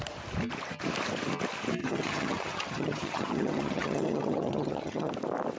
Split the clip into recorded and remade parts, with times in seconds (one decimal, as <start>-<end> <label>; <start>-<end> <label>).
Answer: 0.0-1.8 recorded; 1.8-5.1 remade; 5.1-5.6 recorded

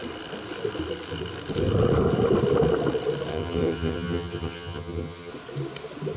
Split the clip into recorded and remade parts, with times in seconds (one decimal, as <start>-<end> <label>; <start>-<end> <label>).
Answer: 0.0-3.3 recorded; 3.3-5.3 remade; 5.3-6.2 recorded

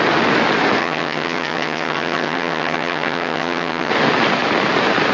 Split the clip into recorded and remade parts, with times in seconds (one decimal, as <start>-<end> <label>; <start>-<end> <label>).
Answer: 0.0-0.8 recorded; 0.8-3.9 remade; 3.9-5.1 recorded

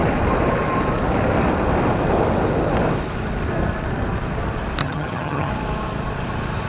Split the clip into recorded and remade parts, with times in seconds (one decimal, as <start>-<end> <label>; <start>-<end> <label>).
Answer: 0.0-4.8 recorded; 4.8-5.5 remade; 5.5-6.7 recorded